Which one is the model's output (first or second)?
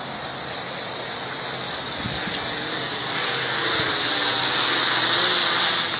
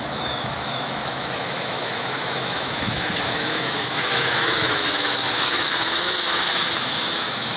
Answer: second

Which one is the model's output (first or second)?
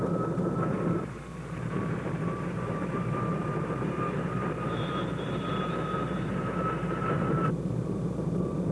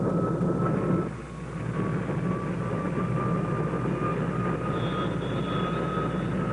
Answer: first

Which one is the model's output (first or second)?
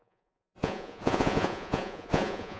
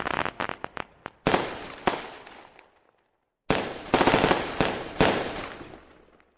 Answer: first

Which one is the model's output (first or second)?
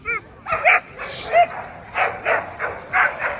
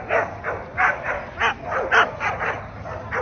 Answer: first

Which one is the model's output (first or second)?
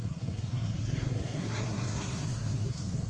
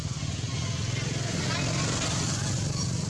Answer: first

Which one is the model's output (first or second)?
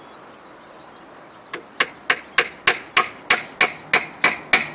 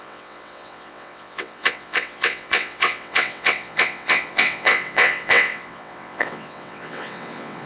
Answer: second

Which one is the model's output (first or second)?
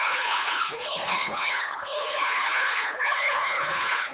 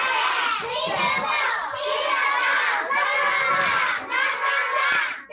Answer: first